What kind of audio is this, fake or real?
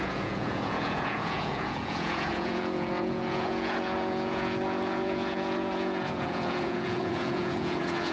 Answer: fake